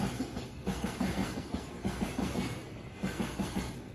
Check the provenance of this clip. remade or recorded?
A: remade